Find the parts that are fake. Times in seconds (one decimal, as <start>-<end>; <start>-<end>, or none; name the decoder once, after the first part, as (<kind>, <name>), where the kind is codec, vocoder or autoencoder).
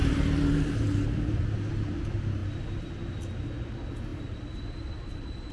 0.0-1.4 (vocoder, BigVGAN v2); 4.1-5.5